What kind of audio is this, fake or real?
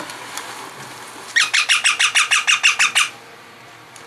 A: real